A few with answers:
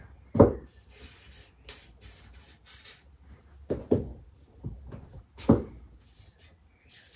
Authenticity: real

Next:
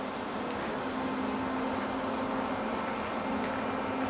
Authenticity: real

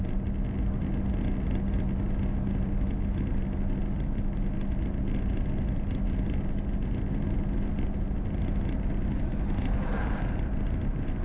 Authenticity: real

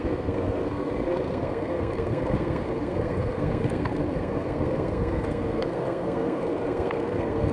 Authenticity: fake